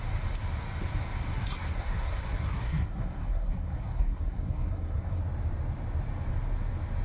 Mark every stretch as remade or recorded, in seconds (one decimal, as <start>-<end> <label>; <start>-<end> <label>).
0.0-1.3 recorded; 1.3-5.2 remade; 5.2-7.0 recorded